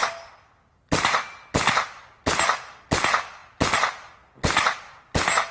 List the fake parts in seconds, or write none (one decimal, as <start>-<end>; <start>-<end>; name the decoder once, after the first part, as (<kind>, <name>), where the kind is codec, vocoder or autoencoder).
none